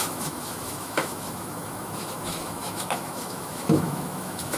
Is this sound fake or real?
fake